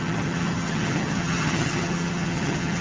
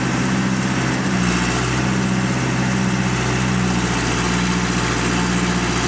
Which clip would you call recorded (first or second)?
second